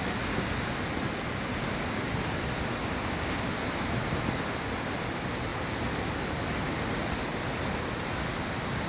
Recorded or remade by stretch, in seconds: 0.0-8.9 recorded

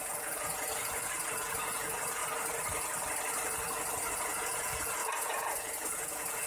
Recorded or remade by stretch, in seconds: 0.0-2.2 remade; 2.2-4.1 recorded; 4.1-6.5 remade

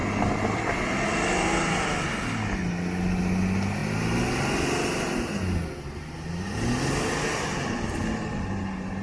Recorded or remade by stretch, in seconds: 0.0-9.0 recorded

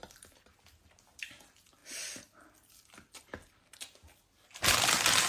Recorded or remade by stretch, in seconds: 0.0-5.3 recorded

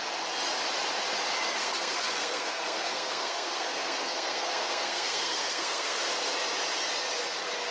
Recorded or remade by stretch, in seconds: 0.0-1.6 recorded; 1.6-6.1 remade; 6.1-7.7 recorded